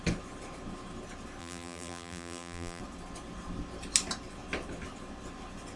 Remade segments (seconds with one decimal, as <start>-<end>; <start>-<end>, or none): 1.4-2.8